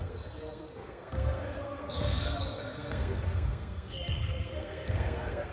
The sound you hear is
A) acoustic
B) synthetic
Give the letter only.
B